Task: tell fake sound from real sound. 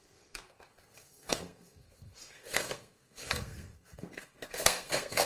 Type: fake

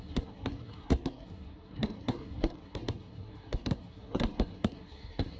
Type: fake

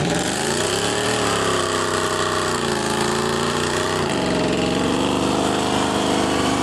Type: fake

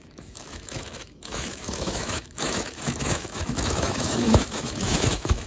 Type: fake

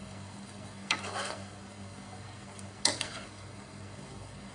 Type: fake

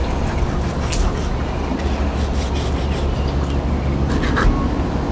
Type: real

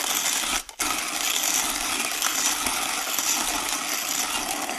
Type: real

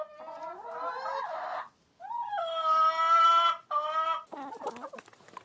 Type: real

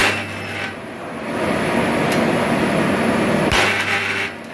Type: real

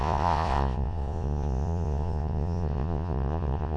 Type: fake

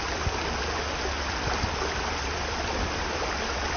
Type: real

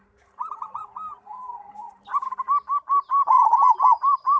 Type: fake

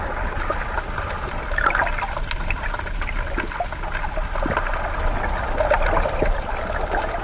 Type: real